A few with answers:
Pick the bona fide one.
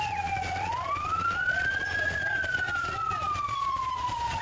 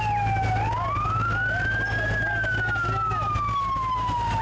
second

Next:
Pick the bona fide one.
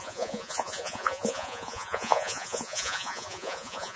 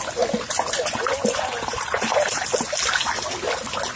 second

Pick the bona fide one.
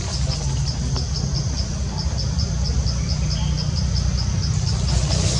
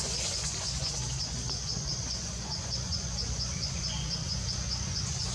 first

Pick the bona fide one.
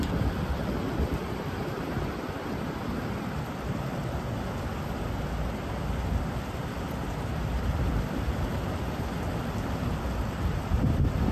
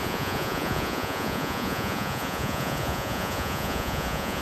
first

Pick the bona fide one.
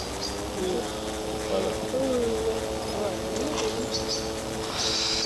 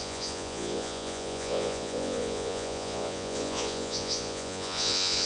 first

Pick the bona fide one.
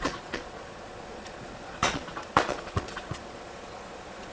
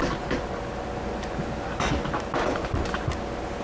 second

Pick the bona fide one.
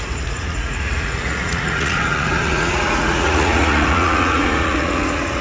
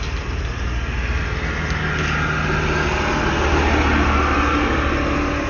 second